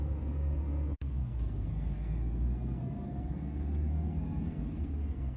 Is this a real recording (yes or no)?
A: no